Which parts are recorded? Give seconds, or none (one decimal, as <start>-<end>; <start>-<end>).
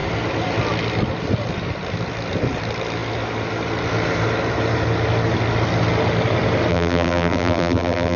0.0-6.7